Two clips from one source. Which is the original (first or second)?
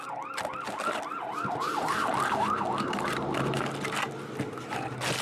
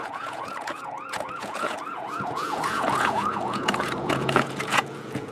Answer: first